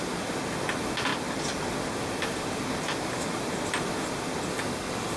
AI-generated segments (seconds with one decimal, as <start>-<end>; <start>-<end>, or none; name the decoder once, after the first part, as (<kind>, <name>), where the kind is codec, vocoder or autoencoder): 4.5-5.2 (codec, DAC)